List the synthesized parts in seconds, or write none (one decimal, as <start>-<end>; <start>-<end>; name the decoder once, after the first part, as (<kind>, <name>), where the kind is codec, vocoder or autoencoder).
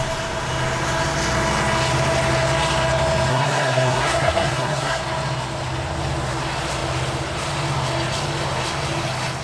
3.3-5.0 (codec, SNAC)